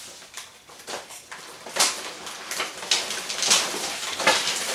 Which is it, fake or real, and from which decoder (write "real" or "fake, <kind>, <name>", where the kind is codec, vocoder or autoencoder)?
real